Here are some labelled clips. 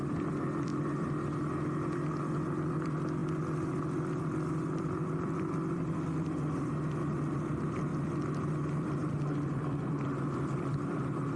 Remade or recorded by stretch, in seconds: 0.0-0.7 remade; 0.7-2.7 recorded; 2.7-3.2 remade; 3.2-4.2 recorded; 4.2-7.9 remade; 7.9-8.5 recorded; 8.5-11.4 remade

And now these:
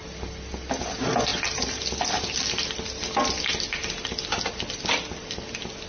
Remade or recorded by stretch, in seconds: 0.0-5.9 recorded

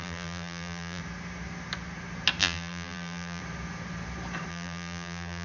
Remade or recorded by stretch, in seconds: 0.0-1.0 remade; 1.0-2.4 recorded; 2.4-3.4 remade; 3.4-4.5 recorded; 4.5-5.4 remade

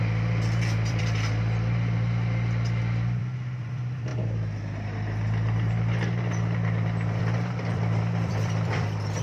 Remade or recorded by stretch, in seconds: 0.0-9.2 remade

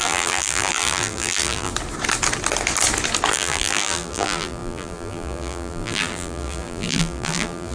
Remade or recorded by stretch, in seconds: 0.0-1.7 remade; 1.7-3.3 recorded; 3.3-7.7 remade

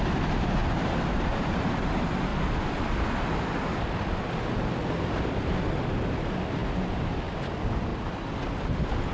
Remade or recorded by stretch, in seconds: 0.0-0.6 recorded; 0.6-1.9 remade; 1.9-6.6 recorded; 6.6-7.2 remade; 7.2-9.1 recorded

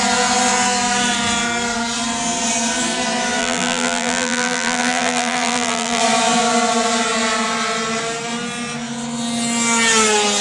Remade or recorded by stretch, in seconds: 0.0-3.4 recorded; 3.4-6.0 remade; 6.0-10.4 recorded